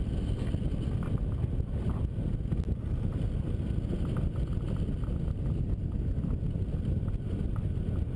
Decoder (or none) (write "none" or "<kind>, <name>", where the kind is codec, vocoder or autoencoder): none